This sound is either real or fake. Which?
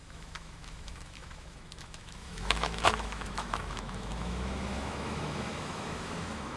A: fake